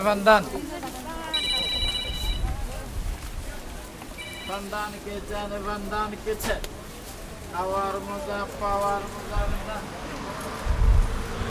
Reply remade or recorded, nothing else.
recorded